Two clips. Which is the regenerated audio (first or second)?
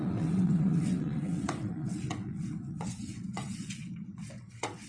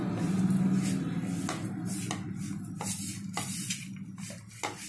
first